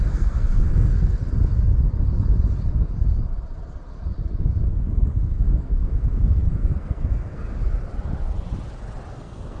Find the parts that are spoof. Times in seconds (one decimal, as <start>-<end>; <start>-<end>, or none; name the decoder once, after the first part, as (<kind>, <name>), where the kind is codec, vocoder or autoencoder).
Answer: 0.0-1.2 (codec, SNAC); 4.7-7.6; 9.1-9.6